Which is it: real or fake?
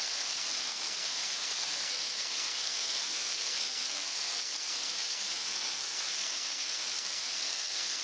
fake